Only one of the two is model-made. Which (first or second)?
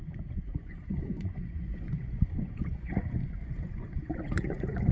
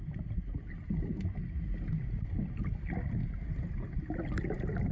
first